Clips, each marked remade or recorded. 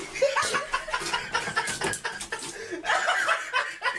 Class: recorded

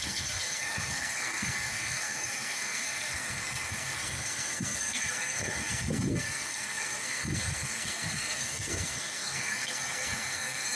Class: remade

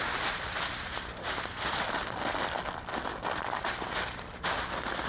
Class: recorded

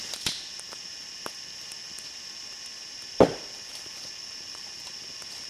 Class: recorded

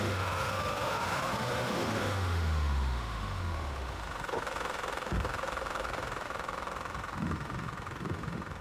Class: remade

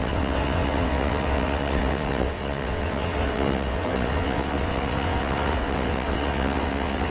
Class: remade